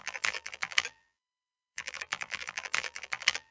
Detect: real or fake fake